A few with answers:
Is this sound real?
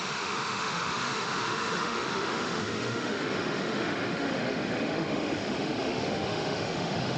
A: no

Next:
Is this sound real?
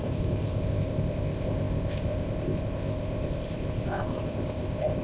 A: no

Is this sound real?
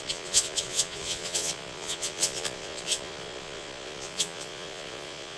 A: no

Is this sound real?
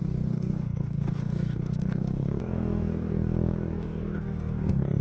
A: no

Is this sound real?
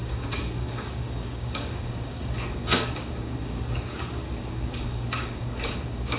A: no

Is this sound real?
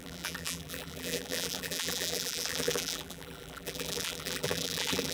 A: no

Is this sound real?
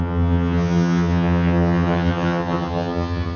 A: no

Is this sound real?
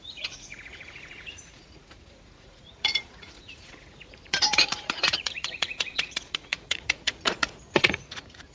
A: no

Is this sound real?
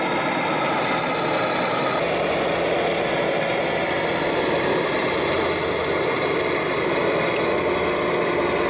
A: yes